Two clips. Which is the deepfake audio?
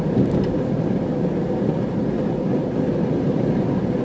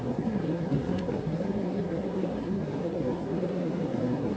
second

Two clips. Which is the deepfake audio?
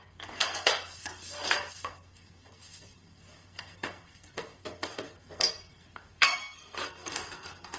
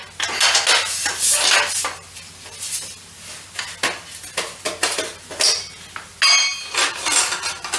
first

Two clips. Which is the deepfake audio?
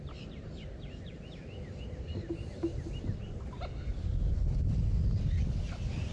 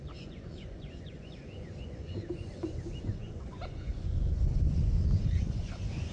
second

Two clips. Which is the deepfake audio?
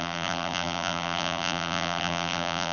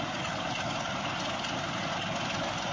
first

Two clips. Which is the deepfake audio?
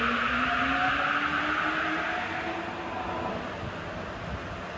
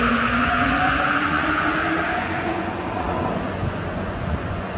second